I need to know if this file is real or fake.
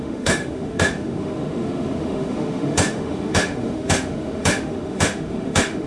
fake